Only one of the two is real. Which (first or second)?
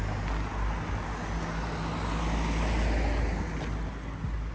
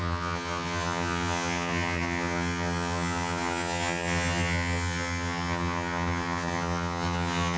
first